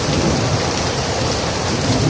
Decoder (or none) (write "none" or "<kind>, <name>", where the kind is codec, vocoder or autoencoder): vocoder, BigVGAN v2